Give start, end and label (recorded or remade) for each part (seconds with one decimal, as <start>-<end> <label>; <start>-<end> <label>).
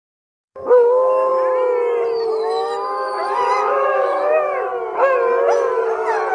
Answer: 0.0-1.3 remade; 1.3-2.3 recorded; 2.3-4.7 remade; 4.7-6.3 recorded